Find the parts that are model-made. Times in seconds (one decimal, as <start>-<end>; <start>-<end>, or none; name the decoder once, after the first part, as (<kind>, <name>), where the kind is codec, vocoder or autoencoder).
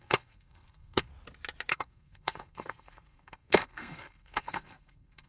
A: 0.0-1.1 (codec, SNAC); 1.7-5.3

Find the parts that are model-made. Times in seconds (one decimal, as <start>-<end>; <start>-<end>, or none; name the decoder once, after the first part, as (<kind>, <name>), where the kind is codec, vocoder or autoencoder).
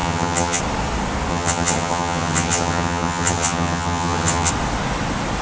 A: 0.0-0.6 (vocoder, HiFi-GAN); 1.3-4.5